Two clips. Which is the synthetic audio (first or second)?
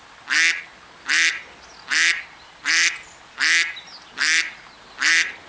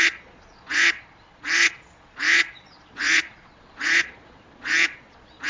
second